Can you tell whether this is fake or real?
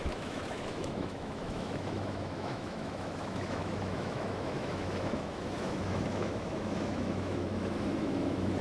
fake